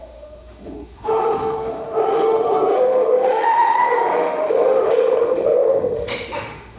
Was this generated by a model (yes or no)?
yes